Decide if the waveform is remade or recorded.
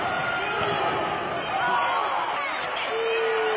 recorded